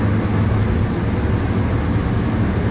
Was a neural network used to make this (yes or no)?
no